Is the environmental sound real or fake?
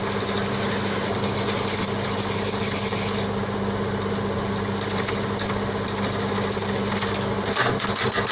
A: real